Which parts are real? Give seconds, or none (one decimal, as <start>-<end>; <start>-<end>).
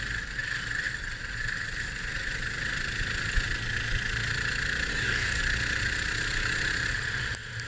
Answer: 0.0-4.9; 5.4-7.7